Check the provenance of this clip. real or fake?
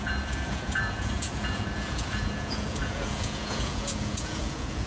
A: fake